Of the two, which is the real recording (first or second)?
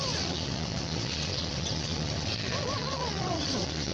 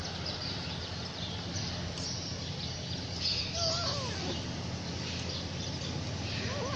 second